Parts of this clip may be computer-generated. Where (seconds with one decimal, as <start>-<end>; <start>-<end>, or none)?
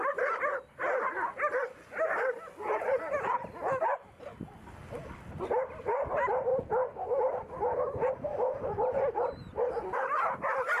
none